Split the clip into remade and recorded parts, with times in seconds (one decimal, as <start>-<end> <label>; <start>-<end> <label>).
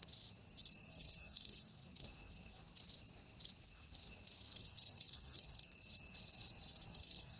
0.0-0.9 recorded; 0.9-2.8 remade; 2.8-3.6 recorded; 3.6-5.7 remade; 5.7-6.9 recorded; 6.9-7.4 remade